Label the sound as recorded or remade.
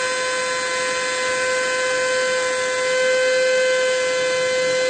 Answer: recorded